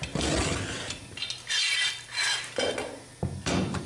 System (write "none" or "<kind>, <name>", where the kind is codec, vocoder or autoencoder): none